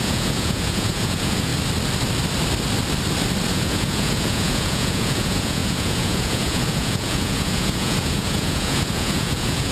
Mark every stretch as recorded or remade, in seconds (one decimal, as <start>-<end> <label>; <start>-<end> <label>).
0.0-1.5 remade; 1.5-3.5 recorded; 3.5-9.7 remade